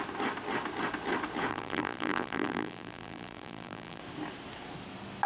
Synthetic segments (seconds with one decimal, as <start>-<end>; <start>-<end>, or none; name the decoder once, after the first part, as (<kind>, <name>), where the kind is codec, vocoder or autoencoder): 1.5-4.0 (vocoder, BigVGAN v2)